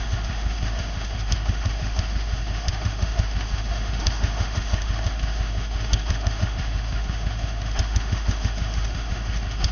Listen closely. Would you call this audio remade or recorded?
remade